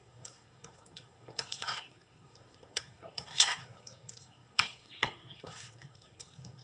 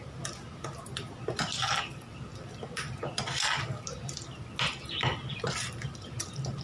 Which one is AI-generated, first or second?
first